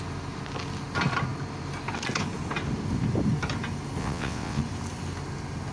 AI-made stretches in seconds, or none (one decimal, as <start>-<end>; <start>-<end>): 4.0-4.6